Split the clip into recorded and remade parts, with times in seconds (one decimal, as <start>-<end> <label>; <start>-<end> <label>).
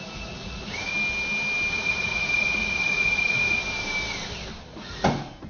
0.0-0.9 remade; 0.9-1.7 recorded; 1.7-3.6 remade; 3.6-4.7 recorded; 4.7-5.5 remade